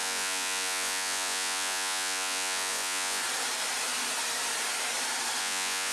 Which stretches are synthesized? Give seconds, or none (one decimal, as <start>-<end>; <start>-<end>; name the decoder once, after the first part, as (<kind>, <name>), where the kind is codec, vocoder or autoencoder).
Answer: 0.0-3.2 (vocoder, Vocos); 5.4-5.9